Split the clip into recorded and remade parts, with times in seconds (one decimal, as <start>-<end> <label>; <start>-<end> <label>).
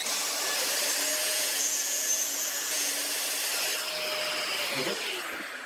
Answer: 0.0-1.2 recorded; 1.2-2.9 remade; 2.9-5.7 recorded